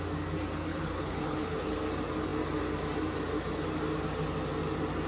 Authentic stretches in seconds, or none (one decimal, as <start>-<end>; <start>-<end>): 0.0-0.7; 1.8-5.1